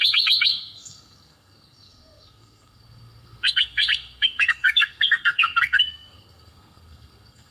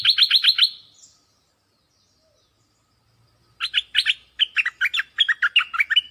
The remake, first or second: first